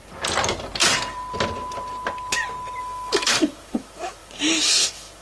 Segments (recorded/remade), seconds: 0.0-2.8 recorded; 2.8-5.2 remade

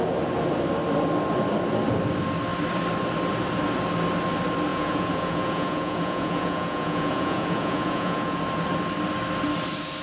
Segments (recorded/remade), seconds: 0.0-4.7 recorded; 4.7-8.4 remade; 8.4-10.0 recorded

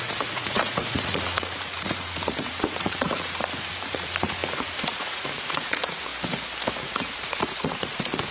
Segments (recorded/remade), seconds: 0.0-6.1 remade; 6.1-6.8 recorded; 6.8-8.3 remade

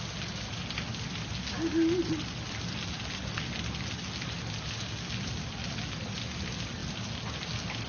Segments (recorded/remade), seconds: 0.0-7.9 recorded

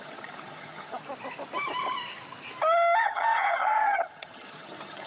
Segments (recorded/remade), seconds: 0.0-1.0 remade; 1.0-3.0 recorded; 3.0-5.1 remade